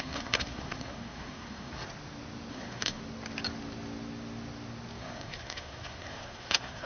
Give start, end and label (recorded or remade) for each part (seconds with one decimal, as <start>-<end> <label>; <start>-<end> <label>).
0.0-1.7 remade; 1.7-2.5 recorded; 2.5-3.0 remade; 3.0-5.0 recorded; 5.0-6.9 remade